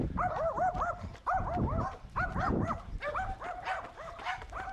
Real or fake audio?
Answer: fake